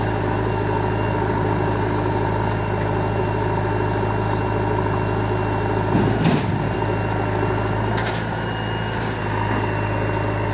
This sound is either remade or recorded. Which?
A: recorded